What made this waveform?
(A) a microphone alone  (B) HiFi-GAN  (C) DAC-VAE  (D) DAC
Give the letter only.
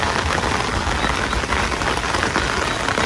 A